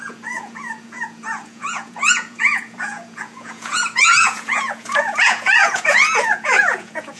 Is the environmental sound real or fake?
fake